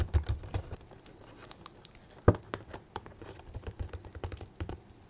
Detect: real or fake real